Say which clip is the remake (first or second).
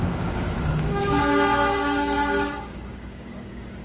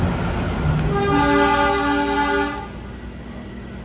first